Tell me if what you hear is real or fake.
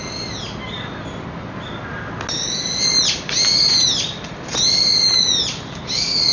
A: real